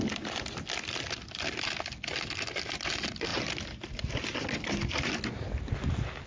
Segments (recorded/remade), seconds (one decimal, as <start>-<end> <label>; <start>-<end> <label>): 0.0-6.3 recorded